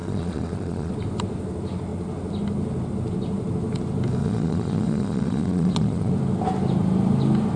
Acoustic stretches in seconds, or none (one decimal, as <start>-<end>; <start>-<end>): 0.9-4.2; 6.1-7.6